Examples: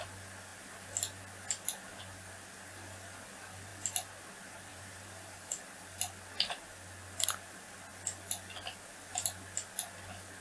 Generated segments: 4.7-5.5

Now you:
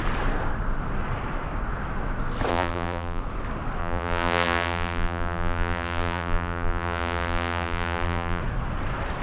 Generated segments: 2.5-3.2; 3.8-8.4